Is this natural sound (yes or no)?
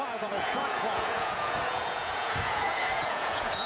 no